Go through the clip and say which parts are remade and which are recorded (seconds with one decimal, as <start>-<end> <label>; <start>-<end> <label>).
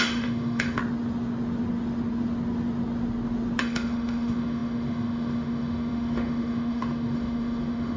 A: 0.0-0.8 remade; 0.8-3.6 recorded; 3.6-8.0 remade